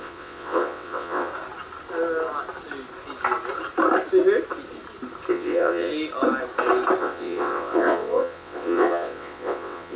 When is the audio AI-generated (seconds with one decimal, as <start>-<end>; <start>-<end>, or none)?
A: 0.0-1.3; 5.3-5.9; 7.0-10.0